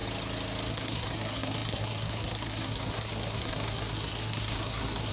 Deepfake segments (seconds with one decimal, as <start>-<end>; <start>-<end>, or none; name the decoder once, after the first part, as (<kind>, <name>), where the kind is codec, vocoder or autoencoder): 0.7-5.1 (codec, SNAC)

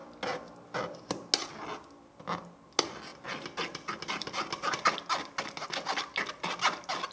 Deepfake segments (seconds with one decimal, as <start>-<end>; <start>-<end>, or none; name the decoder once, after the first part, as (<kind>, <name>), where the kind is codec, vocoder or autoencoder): none

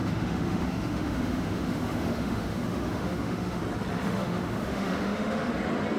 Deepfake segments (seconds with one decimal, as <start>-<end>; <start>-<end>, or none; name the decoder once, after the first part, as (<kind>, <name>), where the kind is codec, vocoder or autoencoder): 0.0-3.6 (autoencoder, DAC-VAE); 4.0-5.5

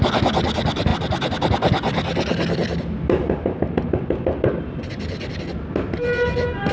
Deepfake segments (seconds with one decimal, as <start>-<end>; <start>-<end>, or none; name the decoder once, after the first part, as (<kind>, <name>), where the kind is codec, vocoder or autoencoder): none

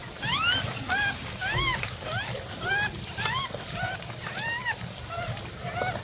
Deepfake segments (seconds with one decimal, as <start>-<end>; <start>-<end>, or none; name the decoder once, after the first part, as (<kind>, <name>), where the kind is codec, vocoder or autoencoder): 3.4-4.6 (vocoder, BigVGAN v2)

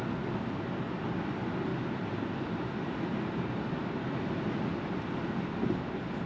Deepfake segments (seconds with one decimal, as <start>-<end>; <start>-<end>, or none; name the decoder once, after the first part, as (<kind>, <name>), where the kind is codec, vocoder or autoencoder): none

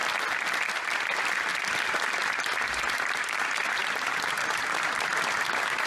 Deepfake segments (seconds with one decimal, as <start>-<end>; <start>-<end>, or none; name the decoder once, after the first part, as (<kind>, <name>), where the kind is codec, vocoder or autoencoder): none

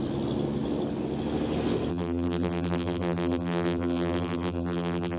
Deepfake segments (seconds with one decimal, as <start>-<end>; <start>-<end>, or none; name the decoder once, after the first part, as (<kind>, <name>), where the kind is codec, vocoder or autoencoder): 1.9-5.2 (vocoder, BigVGAN v2)